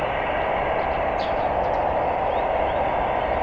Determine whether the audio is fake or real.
real